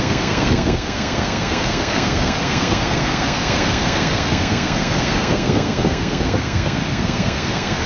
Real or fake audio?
fake